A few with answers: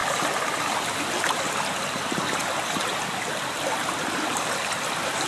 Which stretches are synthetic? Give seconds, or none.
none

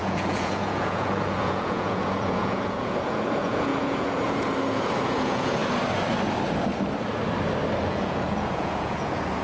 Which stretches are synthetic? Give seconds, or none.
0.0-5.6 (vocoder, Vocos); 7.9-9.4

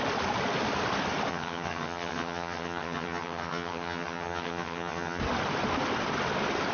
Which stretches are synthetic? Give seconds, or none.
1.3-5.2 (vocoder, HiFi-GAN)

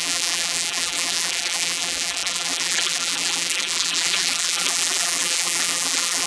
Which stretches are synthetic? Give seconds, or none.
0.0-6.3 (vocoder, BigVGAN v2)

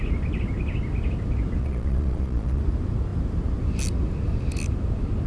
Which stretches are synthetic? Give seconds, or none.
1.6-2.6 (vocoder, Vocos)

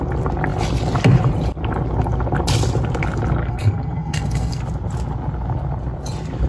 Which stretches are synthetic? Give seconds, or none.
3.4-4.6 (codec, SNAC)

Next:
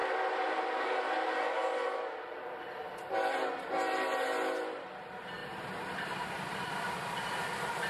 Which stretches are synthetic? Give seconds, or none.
5.4-6.7 (vocoder, BigVGAN v2)